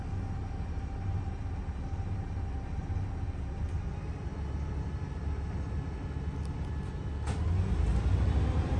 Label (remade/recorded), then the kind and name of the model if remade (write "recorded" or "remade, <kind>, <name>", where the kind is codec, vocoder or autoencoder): recorded